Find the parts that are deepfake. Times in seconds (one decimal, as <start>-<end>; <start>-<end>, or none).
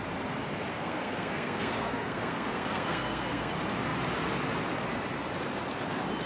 0.7-3.5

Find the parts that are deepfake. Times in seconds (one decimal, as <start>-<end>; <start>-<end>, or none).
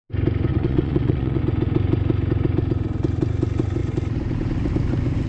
0.5-1.4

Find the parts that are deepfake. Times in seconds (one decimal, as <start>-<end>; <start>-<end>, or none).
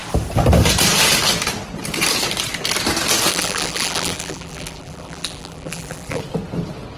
3.3-6.2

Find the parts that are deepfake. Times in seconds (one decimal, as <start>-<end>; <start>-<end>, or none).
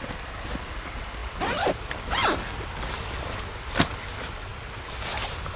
1.2-3.0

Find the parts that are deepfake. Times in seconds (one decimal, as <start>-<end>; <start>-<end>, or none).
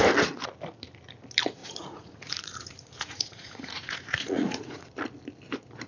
1.6-4.9